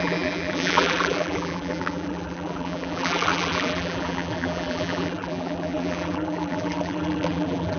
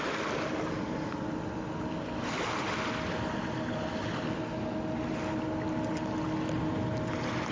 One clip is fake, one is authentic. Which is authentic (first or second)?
second